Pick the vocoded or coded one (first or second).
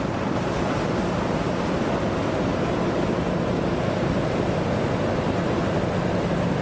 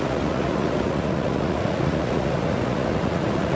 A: second